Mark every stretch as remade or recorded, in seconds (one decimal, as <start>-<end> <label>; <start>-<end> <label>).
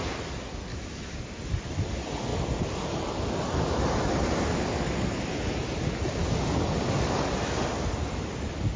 0.0-0.7 recorded; 0.7-1.2 remade; 1.2-8.8 recorded